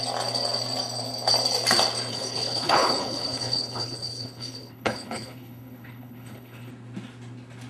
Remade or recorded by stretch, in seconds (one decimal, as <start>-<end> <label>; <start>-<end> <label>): 0.0-2.1 recorded; 2.1-6.7 remade; 6.7-7.7 recorded